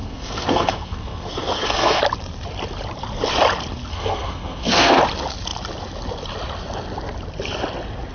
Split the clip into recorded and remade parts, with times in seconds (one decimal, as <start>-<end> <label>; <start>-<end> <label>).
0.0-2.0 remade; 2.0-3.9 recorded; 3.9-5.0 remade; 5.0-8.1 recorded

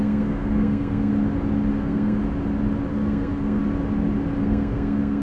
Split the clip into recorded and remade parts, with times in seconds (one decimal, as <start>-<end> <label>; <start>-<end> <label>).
0.0-1.1 remade; 1.1-1.7 recorded; 1.7-2.2 remade; 2.2-2.9 recorded; 2.9-3.6 remade; 3.6-4.4 recorded; 4.4-5.2 remade

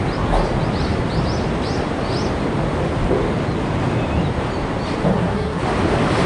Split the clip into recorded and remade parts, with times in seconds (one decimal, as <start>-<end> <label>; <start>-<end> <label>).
0.0-5.1 recorded; 5.1-5.6 remade; 5.6-6.3 recorded

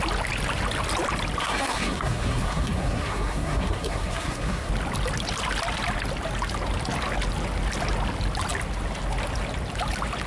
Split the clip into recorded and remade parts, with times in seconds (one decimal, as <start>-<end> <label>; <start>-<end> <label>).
0.0-1.4 recorded; 1.4-4.7 remade; 4.7-10.3 recorded